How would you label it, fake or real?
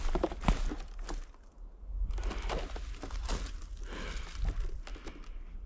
real